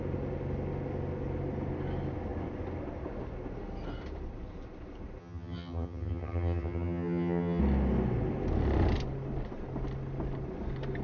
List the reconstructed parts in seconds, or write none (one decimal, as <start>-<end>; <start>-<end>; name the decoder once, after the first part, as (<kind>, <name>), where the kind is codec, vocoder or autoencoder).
5.2-7.6 (vocoder, HiFi-GAN)

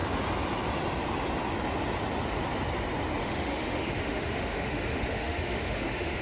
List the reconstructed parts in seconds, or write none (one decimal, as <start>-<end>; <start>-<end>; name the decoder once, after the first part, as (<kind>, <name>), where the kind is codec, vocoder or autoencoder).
3.2-6.2 (autoencoder, DAC-VAE)

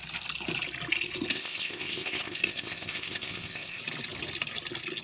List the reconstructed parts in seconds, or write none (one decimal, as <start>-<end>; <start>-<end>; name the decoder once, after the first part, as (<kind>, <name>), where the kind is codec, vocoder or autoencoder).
1.3-3.8 (codec, ZipCodec)

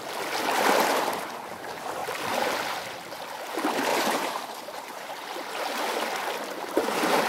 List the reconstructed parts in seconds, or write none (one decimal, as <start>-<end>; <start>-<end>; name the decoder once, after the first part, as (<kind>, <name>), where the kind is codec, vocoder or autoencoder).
3.9-5.1 (vocoder, BigVGAN v2)

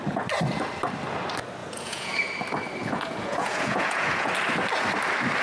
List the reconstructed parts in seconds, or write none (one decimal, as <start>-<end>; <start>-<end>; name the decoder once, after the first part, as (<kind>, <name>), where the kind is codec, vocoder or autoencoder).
1.6-2.3 (vocoder, Vocos); 2.8-4.3

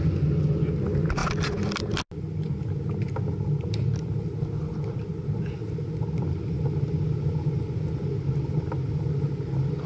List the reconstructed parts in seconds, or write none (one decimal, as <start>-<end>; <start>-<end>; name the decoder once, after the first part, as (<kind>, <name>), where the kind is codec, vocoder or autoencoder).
none

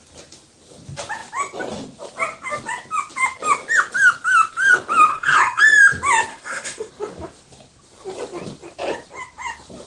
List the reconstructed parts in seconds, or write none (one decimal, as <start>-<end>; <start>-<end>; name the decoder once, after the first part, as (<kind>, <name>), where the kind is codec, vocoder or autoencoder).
5.1-5.6 (codec, SNAC); 6.3-6.9

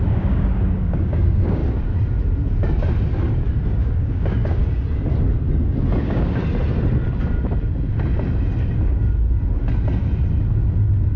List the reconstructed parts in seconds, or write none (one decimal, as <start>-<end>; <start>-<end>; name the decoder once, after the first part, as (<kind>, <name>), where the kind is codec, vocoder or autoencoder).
0.0-1.6 (codec, DAC); 3.8-4.6; 6.0-6.4